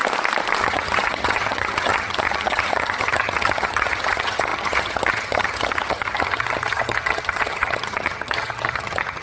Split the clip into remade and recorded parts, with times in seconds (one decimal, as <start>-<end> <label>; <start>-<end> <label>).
0.0-0.6 recorded; 0.6-9.2 remade

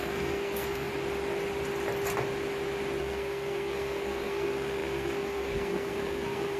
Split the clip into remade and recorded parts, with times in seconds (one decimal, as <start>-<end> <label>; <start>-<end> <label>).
0.0-0.9 remade; 0.9-3.0 recorded; 3.0-6.6 remade

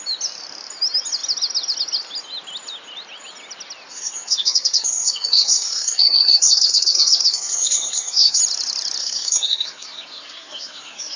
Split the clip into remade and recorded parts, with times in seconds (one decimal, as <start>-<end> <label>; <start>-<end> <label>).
0.0-3.9 recorded; 3.9-8.4 remade; 8.4-9.0 recorded; 9.0-11.2 remade

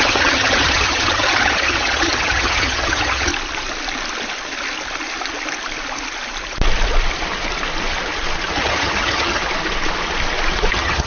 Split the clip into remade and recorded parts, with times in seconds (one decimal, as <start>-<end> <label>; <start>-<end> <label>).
0.0-3.3 remade; 3.3-8.5 recorded; 8.5-9.4 remade; 9.4-10.7 recorded; 10.7-11.1 remade

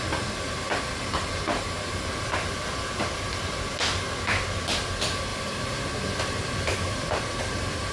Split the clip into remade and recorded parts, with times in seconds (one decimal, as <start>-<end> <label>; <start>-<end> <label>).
0.0-5.3 recorded; 5.3-7.2 remade; 7.2-7.9 recorded